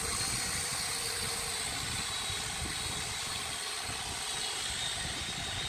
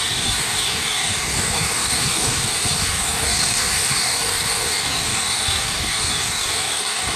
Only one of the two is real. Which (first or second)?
first